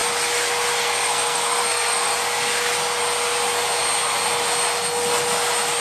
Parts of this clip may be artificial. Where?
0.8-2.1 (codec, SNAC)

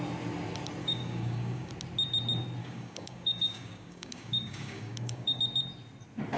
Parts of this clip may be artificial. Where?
0.8-1.7 (codec, DAC); 2.6-5.4

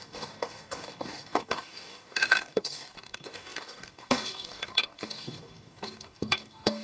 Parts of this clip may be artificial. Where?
0.0-6.8 (codec, DAC)

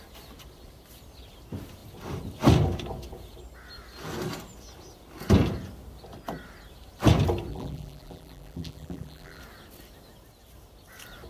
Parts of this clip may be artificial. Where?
7.5-9.4 (vocoder, BigVGAN v2)

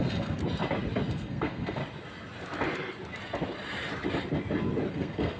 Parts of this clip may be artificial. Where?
0.0-0.4 (codec, SNAC); 1.1-1.8; 4.9-5.4

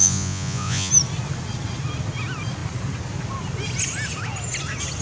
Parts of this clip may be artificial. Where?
0.0-0.9 (vocoder, Vocos)